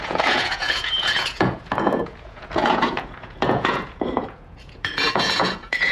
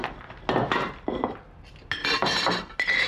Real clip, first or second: second